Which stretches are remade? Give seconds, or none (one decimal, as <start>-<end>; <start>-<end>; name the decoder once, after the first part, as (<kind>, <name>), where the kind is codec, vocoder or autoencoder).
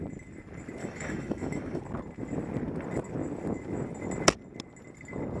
0.8-1.8 (autoencoder, DAC-VAE)